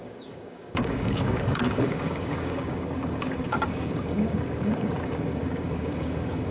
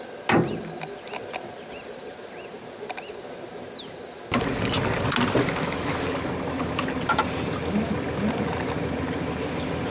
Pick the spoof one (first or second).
first